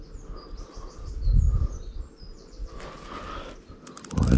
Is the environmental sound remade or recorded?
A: recorded